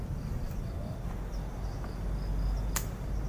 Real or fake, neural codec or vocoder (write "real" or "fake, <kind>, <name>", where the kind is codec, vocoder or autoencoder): real